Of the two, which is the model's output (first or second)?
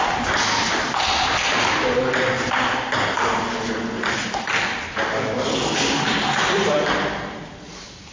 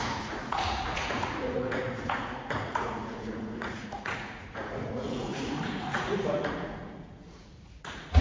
second